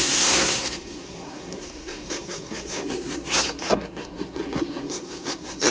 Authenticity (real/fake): fake